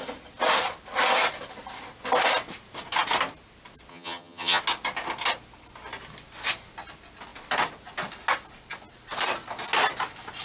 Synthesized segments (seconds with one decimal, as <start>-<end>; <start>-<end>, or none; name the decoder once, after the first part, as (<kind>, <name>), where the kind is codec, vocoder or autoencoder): 3.9-4.6 (vocoder, HiFi-GAN)